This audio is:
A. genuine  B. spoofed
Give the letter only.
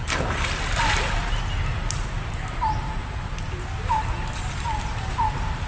A